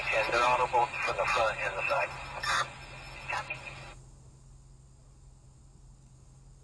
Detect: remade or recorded recorded